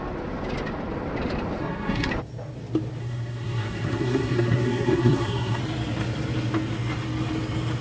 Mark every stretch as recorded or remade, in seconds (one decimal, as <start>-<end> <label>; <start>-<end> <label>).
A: 0.0-1.6 recorded; 1.6-2.1 remade; 2.1-3.0 recorded; 3.0-5.6 remade; 5.6-7.8 recorded